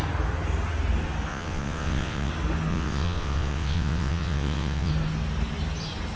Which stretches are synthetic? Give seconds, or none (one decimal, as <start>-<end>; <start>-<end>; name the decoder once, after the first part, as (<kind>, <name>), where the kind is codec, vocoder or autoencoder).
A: 1.3-2.3 (vocoder, WaveNeXt); 2.7-4.9